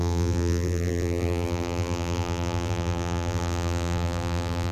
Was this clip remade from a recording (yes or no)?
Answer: yes